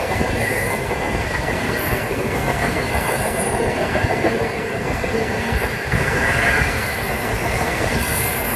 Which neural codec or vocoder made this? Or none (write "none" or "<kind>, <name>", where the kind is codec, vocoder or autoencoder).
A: codec, SNAC